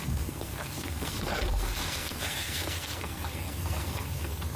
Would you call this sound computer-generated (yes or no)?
yes